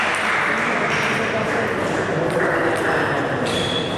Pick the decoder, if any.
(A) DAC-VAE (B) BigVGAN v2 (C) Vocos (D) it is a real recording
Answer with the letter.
D